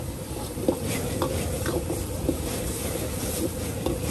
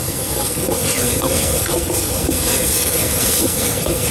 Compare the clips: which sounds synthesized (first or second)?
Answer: second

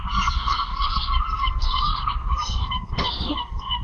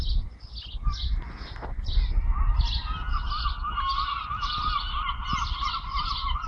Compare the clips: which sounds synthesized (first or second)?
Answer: first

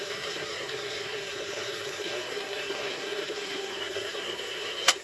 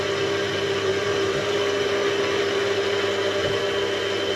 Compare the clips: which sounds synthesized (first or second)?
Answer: first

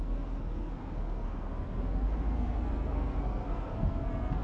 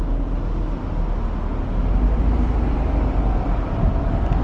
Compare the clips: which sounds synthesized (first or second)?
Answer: first